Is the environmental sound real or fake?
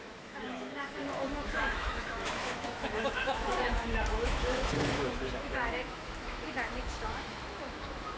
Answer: fake